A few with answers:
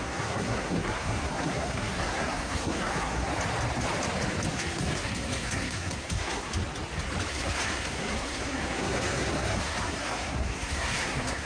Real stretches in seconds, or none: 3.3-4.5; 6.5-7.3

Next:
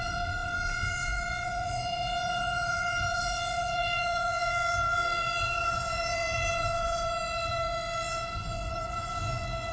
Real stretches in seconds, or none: none

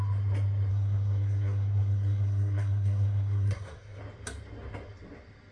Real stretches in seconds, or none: 0.0-0.7; 4.0-5.5

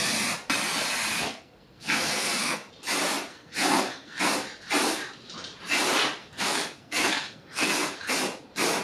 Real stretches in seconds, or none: 0.0-1.1; 2.7-3.3; 4.2-6.2; 8.1-8.8

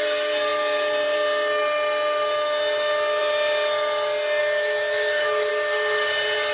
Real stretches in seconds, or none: 0.0-4.4; 5.5-6.5

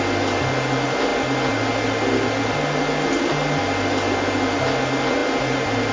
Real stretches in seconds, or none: 0.0-5.9